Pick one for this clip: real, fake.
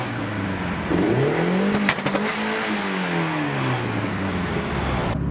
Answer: real